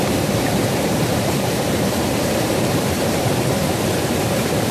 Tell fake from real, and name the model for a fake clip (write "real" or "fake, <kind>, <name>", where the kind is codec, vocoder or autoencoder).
fake, vocoder, BigVGAN v2